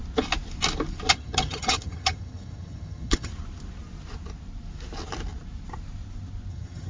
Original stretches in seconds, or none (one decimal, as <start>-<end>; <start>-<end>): 0.0-1.1; 3.3-6.5